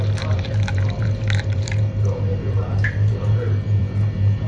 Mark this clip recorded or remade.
remade